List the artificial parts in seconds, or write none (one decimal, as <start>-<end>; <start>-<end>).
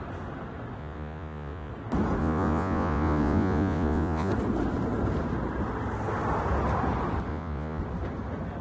0.8-1.7; 2.2-4.3; 7.3-7.8